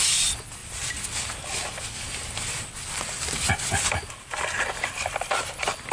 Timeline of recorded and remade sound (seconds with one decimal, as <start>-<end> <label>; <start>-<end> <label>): 0.0-5.9 recorded